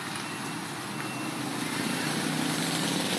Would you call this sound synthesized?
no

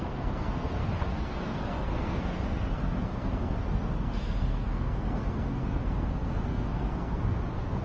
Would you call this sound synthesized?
yes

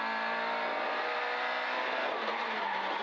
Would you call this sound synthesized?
no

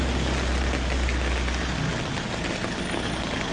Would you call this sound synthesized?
no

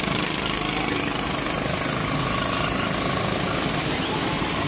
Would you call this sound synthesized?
no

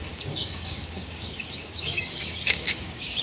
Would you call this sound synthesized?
yes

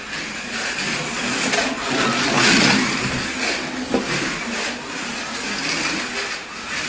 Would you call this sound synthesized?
no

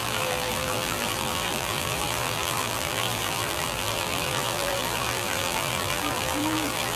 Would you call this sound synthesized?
yes